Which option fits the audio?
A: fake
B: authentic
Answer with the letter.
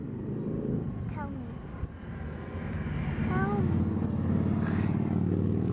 B